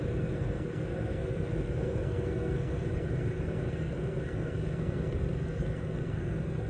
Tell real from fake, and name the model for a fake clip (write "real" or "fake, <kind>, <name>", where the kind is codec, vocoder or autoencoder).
fake, codec, SNAC